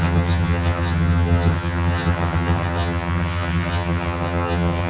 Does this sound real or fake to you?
fake